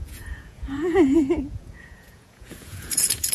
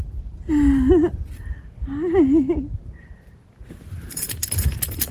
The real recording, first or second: second